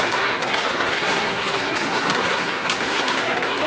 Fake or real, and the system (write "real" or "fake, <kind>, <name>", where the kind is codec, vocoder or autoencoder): fake, codec, SNAC